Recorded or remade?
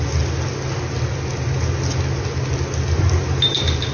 recorded